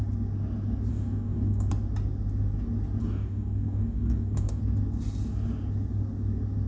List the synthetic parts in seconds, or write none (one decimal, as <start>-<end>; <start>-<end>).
0.9-1.7; 3.0-4.6

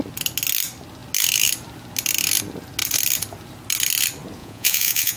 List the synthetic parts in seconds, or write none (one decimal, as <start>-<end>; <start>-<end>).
4.4-5.2

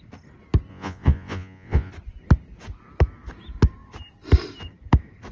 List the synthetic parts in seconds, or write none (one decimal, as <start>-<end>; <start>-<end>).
0.7-1.9

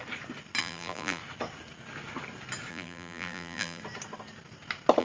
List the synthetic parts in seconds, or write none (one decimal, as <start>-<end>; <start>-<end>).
0.6-1.2; 2.7-3.8